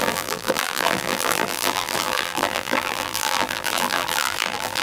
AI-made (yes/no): yes